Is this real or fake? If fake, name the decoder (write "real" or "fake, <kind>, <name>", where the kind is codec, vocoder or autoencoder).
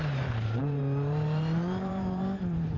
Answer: fake, vocoder, BigVGAN v2